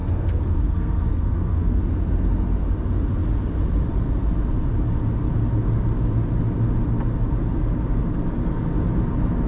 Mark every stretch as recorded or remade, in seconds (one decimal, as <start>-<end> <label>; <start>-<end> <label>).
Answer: 0.0-1.8 remade; 1.8-9.5 recorded